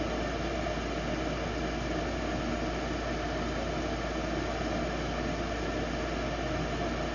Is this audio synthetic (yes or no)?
no